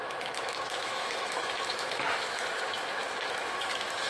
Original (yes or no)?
no